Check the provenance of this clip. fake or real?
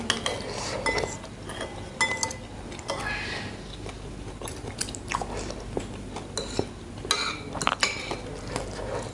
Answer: real